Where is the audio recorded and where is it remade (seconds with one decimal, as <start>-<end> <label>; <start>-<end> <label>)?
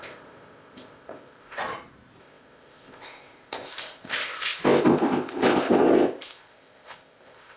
0.0-1.6 remade; 1.6-2.2 recorded; 2.2-7.6 remade